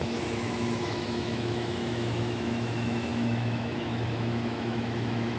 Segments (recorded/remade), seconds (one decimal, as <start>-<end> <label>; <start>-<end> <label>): 0.0-5.4 remade